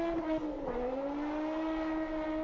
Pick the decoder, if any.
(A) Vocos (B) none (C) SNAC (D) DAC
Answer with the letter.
B